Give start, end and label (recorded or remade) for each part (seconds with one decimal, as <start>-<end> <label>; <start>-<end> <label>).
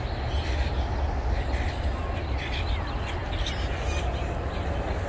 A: 0.0-5.1 recorded